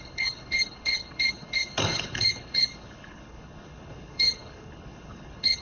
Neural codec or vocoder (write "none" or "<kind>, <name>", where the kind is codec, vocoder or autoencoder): codec, HILCodec